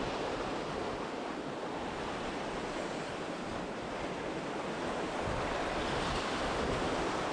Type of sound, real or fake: real